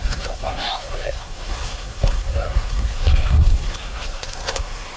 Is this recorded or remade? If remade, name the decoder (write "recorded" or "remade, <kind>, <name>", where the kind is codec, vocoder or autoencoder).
remade, codec, SNAC